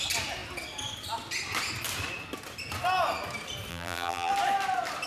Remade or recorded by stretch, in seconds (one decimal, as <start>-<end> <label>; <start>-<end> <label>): 0.0-3.7 recorded; 3.7-4.3 remade; 4.3-5.1 recorded

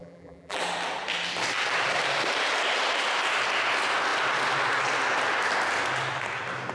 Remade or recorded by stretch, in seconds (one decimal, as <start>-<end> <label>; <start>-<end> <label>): 0.0-0.6 remade; 0.6-6.7 recorded

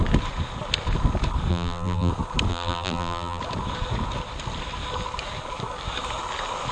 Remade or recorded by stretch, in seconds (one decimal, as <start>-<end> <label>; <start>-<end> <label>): 0.0-1.5 recorded; 1.5-2.1 remade; 2.1-2.5 recorded; 2.5-3.4 remade; 3.4-6.7 recorded

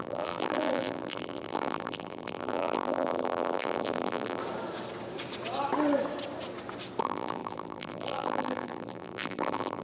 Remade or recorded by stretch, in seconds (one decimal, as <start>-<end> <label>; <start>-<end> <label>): 0.0-4.4 remade; 4.4-7.0 recorded; 7.0-9.8 remade

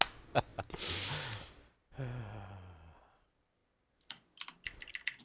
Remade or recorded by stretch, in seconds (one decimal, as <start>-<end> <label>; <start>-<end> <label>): 0.0-5.2 recorded

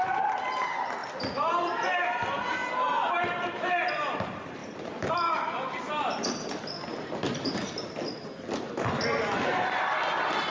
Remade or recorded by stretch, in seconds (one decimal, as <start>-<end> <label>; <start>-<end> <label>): 0.0-2.6 remade; 2.6-3.2 recorded; 3.2-6.9 remade; 6.9-8.7 recorded; 8.7-10.5 remade

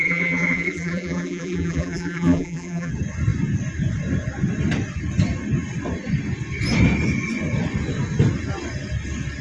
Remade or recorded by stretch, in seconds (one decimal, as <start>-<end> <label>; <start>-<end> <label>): 0.0-2.9 remade; 2.9-9.4 recorded

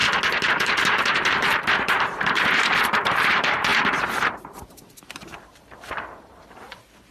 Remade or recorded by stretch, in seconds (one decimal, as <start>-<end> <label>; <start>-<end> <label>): 0.0-0.5 recorded; 0.5-7.1 remade